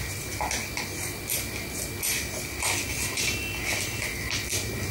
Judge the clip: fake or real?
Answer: real